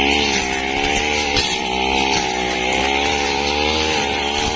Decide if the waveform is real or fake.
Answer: real